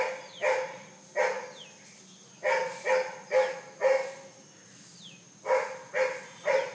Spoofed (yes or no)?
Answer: no